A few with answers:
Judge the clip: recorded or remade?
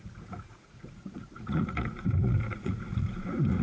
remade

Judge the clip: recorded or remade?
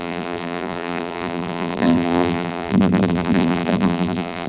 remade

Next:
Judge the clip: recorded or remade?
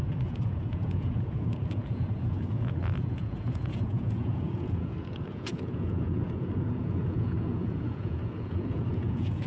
remade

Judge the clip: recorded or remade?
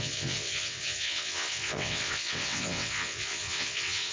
remade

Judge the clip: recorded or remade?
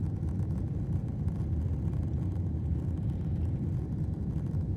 remade